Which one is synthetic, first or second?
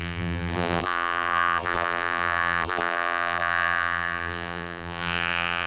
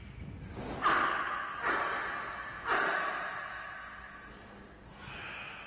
first